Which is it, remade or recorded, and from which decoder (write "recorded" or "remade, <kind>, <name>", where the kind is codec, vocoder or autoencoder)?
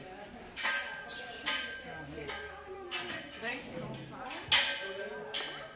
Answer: recorded